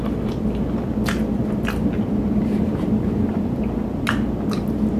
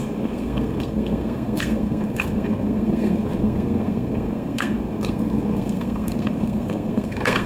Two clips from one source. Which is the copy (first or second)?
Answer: second